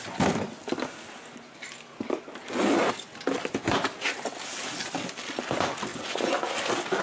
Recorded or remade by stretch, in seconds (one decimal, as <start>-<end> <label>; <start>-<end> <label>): 0.0-5.9 recorded; 5.9-6.6 remade; 6.6-7.0 recorded